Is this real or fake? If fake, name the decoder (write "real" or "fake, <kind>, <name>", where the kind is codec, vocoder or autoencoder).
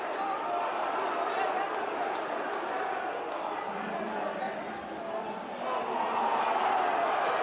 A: real